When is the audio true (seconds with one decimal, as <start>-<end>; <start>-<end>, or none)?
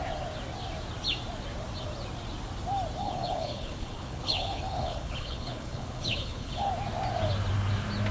0.0-3.0; 6.7-8.1